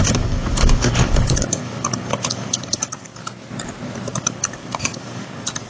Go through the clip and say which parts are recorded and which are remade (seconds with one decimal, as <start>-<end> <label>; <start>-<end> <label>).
0.0-3.2 remade; 3.2-4.1 recorded; 4.1-5.7 remade